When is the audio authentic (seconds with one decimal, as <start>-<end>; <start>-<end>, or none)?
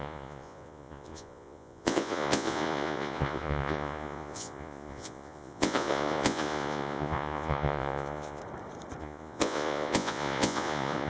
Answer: 8.4-9.0